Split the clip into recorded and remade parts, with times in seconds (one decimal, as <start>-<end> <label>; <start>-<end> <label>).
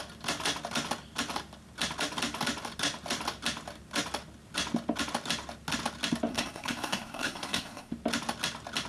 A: 0.0-6.3 recorded; 6.3-7.9 remade; 7.9-8.9 recorded